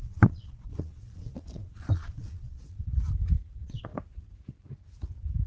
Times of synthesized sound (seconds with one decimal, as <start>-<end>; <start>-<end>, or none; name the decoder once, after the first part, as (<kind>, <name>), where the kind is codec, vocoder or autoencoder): 0.0-2.9 (vocoder, Vocos); 3.5-3.9